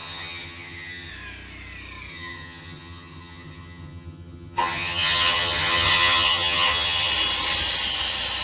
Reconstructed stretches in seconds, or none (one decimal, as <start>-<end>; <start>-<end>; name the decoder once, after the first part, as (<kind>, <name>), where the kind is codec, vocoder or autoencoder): 0.0-1.1 (vocoder, HiFi-GAN); 2.1-7.1